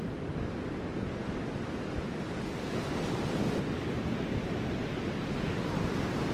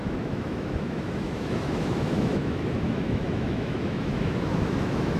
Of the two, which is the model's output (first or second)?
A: second